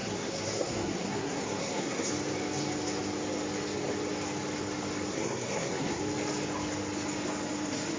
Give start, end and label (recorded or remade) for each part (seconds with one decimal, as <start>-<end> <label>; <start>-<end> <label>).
0.0-2.1 remade; 2.1-5.1 recorded; 5.1-6.0 remade; 6.0-8.0 recorded